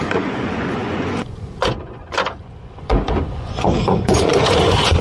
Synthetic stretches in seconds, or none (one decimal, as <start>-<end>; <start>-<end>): 0.0-5.0